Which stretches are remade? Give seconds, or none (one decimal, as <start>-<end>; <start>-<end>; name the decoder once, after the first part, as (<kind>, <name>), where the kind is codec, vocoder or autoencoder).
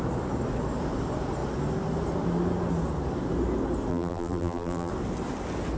3.9-4.9 (vocoder, BigVGAN v2)